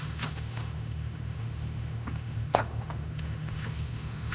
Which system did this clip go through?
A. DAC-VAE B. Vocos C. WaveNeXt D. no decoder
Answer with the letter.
A